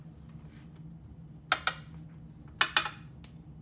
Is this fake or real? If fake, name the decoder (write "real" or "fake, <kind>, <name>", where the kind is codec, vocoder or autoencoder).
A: real